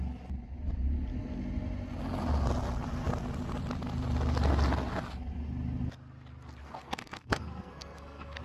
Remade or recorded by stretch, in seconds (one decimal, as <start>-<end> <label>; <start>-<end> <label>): 0.0-6.6 recorded; 6.6-8.4 remade